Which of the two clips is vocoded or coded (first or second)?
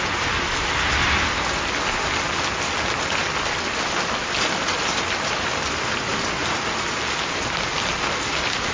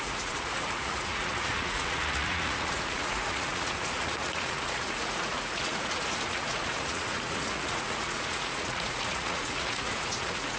second